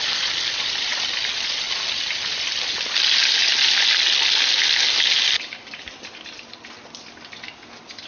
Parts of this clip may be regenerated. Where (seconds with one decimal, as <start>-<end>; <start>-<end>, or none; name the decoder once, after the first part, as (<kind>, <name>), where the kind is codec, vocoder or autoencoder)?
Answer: none